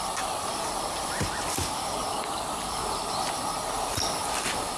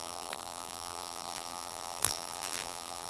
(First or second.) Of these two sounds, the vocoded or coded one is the second